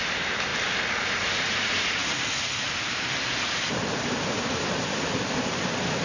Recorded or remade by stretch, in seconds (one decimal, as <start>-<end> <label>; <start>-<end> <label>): 0.0-0.5 remade; 0.5-1.2 recorded; 1.2-6.0 remade